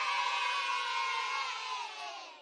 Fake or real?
fake